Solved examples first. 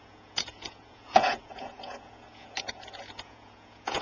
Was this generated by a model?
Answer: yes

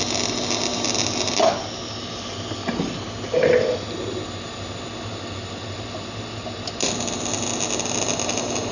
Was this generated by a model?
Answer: no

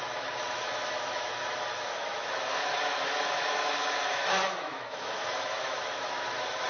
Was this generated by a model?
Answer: yes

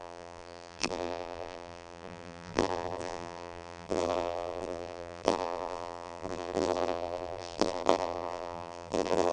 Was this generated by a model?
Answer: yes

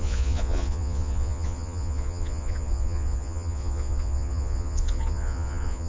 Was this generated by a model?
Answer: yes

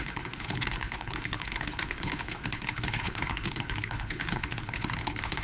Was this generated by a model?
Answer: yes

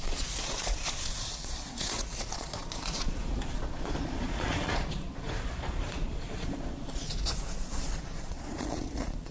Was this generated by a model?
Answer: yes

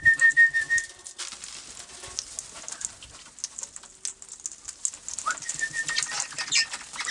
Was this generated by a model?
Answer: no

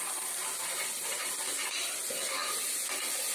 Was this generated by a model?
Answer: no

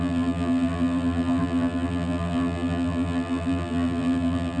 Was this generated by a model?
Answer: yes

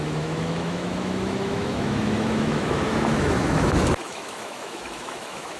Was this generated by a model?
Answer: yes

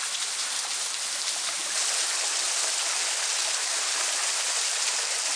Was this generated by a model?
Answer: no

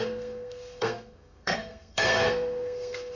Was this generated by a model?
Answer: yes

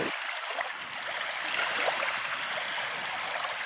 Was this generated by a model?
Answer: no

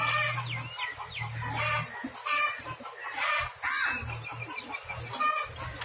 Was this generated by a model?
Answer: no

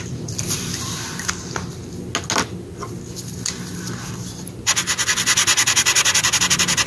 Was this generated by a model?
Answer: no